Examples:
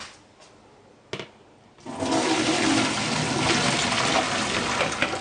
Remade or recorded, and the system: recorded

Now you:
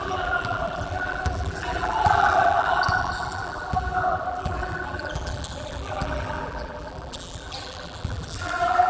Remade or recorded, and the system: remade, vocoder, BigVGAN v2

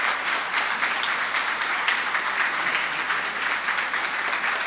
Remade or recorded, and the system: recorded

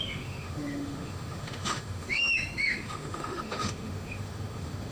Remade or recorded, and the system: remade, autoencoder, DAC-VAE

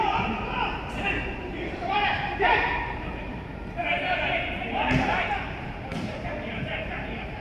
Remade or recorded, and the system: remade, vocoder, BigVGAN v2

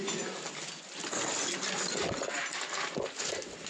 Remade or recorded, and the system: recorded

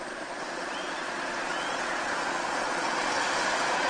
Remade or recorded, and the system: remade, vocoder, Vocos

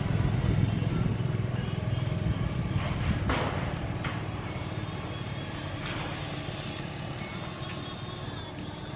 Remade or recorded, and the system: recorded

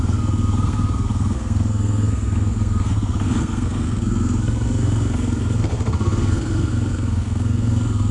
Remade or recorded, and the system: remade, codec, SNAC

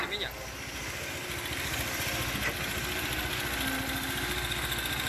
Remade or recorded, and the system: recorded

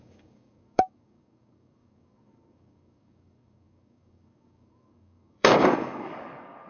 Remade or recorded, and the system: remade, codec, DAC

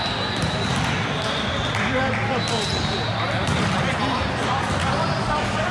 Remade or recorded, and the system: recorded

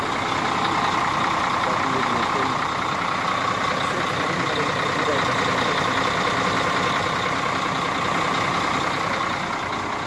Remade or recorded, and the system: recorded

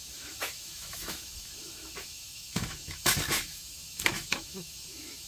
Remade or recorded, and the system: remade, autoencoder, DAC-VAE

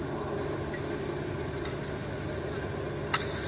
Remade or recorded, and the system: recorded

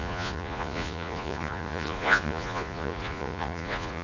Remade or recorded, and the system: remade, vocoder, Vocos